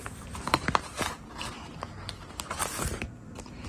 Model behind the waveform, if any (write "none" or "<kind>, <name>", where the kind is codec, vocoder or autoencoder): vocoder, BigVGAN v2